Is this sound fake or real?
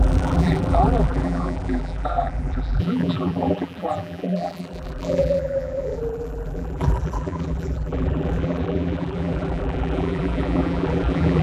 fake